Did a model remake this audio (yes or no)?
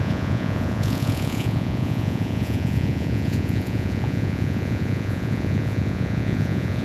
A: yes